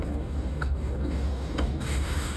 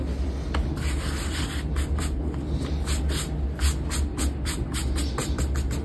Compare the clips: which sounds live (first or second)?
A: second